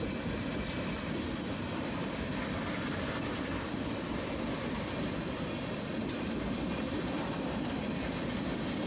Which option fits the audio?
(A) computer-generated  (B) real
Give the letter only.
B